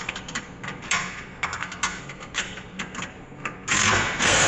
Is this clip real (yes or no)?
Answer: no